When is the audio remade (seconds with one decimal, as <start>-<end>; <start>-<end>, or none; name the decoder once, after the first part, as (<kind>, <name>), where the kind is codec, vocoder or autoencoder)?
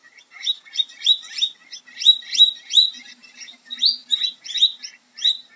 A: 0.0-0.6 (vocoder, BigVGAN v2)